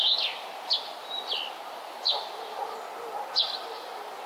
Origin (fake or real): real